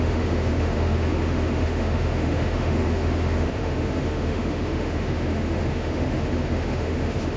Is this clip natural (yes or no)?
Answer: no